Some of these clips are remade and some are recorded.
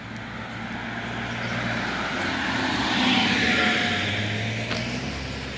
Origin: recorded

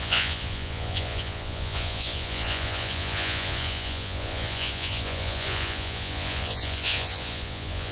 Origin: remade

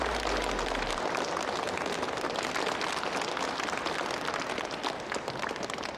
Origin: recorded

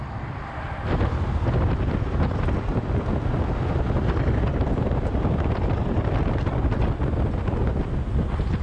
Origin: recorded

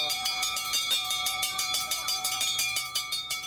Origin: remade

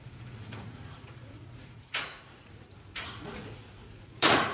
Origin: remade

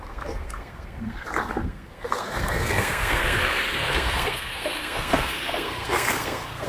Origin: remade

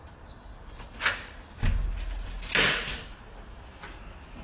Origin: recorded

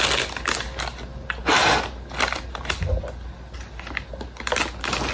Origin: recorded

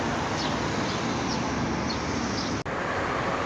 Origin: recorded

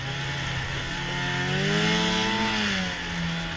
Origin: recorded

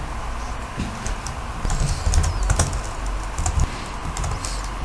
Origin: recorded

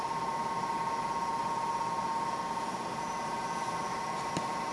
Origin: remade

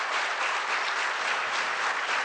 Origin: recorded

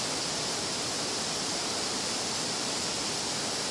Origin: remade